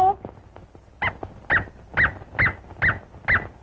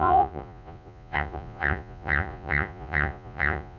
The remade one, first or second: second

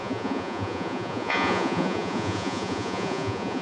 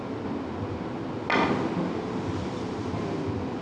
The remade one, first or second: first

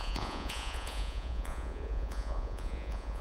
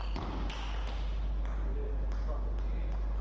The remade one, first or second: first